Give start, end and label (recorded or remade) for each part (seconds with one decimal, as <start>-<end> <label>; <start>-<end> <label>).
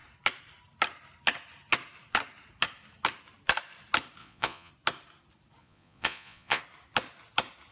0.0-4.2 recorded; 4.2-4.7 remade; 4.7-5.6 recorded; 5.6-6.6 remade; 6.6-7.7 recorded